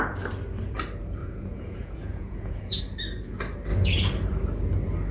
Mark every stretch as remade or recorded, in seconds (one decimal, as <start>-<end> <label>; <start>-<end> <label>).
0.0-1.2 recorded; 1.2-2.8 remade; 2.8-5.1 recorded